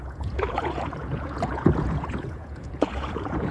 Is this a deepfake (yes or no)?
yes